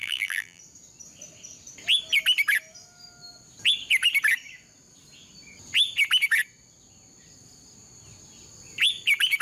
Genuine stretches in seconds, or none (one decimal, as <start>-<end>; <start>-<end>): 0.6-9.4